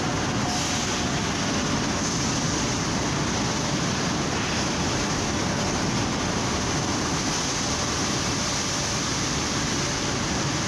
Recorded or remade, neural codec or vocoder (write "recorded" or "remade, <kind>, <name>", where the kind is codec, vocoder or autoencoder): recorded